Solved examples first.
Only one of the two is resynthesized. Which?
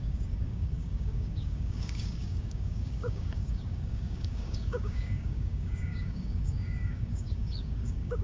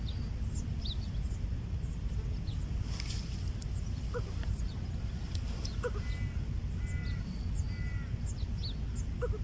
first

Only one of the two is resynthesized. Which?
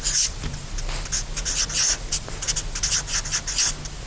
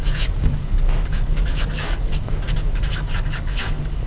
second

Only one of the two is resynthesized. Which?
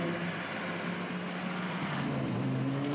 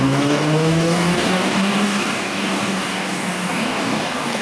second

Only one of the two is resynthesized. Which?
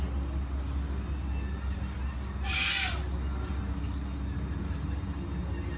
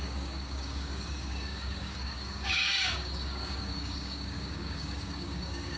second